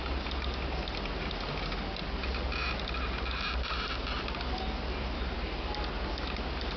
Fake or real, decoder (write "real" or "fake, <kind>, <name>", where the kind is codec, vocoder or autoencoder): real